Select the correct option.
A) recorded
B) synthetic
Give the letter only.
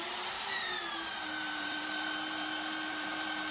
B